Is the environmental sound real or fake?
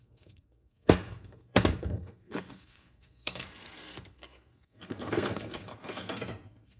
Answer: fake